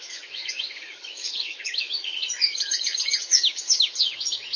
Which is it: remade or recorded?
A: remade